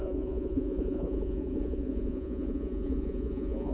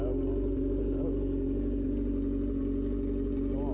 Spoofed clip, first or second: first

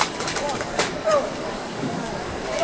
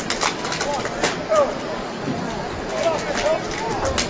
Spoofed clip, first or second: first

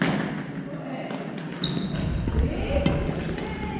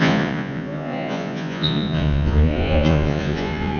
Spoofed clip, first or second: second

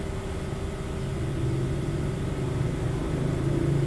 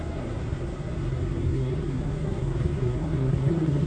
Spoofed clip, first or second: second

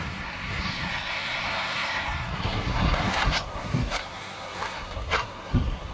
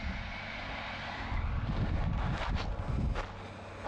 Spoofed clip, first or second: first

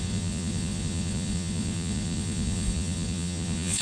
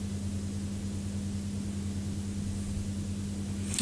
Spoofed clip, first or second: first